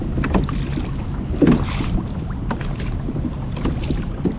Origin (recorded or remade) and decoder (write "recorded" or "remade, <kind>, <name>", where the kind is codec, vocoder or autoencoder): recorded